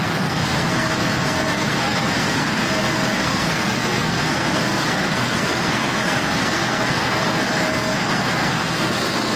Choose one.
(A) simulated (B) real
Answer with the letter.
A